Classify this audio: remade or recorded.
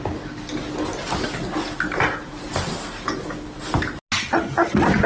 recorded